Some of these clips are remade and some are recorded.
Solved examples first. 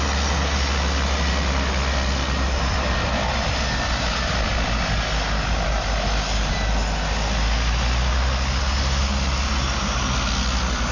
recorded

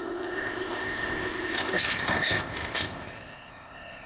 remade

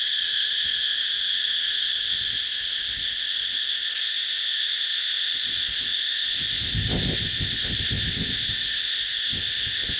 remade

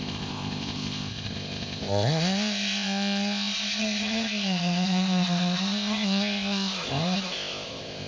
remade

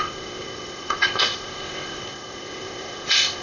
remade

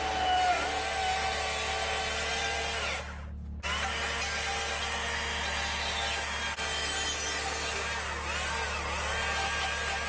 recorded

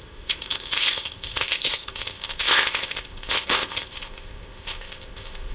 remade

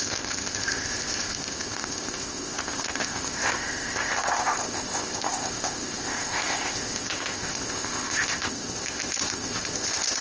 remade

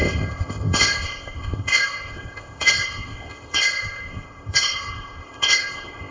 remade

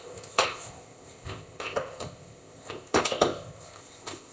remade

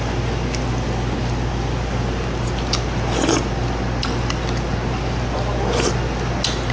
recorded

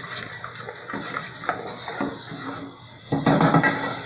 recorded